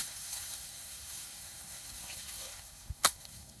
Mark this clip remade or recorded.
remade